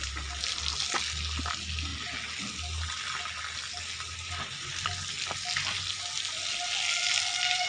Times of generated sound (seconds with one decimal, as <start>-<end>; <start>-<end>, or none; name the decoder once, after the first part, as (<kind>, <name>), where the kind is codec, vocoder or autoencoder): none